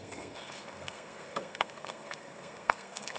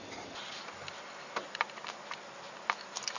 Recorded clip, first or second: second